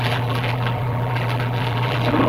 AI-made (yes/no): yes